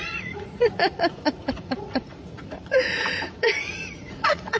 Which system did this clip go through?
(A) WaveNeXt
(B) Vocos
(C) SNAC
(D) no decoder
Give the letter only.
B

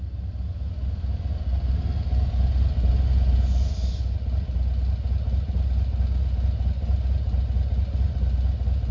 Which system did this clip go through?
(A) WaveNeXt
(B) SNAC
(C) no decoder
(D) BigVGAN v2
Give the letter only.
C